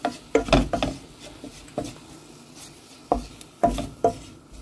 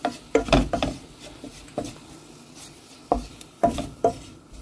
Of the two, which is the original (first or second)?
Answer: first